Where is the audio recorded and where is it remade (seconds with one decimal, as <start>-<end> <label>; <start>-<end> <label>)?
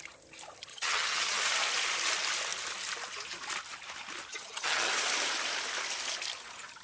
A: 0.0-0.7 recorded; 0.7-1.4 remade; 1.4-4.3 recorded; 4.3-4.9 remade; 4.9-6.8 recorded